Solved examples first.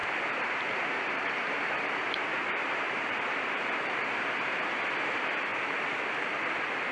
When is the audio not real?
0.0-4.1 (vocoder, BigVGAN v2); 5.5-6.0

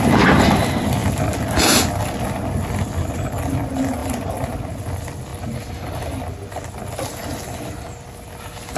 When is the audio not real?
none

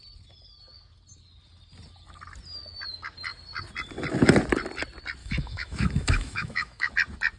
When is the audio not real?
5.2-6.9 (autoencoder, DAC-VAE)